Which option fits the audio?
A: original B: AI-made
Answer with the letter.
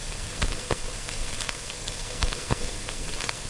B